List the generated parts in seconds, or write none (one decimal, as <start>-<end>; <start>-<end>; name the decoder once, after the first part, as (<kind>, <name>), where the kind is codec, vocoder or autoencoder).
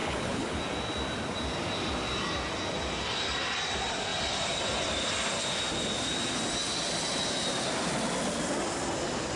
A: 0.0-0.6 (codec, HILCodec)